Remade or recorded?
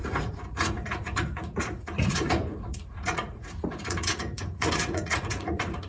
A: remade